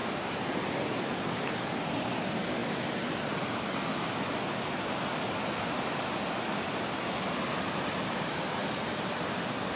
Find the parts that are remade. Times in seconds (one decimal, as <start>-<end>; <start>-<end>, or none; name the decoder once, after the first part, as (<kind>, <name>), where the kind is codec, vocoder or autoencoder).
none